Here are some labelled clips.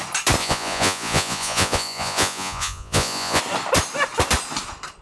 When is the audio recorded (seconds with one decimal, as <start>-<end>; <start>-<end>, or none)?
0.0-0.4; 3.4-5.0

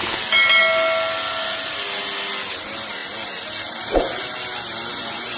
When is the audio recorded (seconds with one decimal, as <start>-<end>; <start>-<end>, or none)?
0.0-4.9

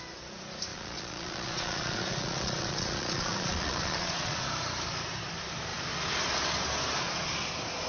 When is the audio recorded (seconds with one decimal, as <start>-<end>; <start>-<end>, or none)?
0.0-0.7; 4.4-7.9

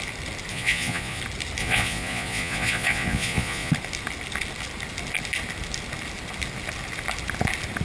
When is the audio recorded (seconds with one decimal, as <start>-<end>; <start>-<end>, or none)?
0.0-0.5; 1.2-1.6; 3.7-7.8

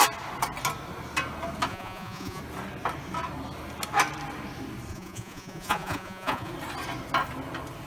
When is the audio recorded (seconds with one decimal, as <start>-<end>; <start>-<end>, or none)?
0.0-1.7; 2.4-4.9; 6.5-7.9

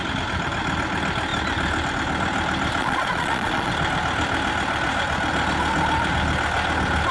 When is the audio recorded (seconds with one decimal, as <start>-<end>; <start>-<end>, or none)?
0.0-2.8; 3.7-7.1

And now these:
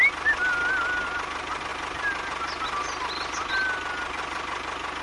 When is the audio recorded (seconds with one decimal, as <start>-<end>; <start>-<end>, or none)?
0.0-5.0